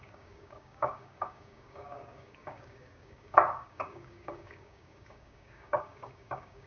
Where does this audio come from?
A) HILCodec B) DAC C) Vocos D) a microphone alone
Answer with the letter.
B